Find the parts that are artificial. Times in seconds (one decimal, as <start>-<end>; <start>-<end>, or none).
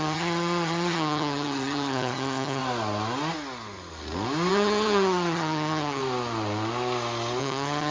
0.0-2.6; 4.5-6.0; 7.4-7.9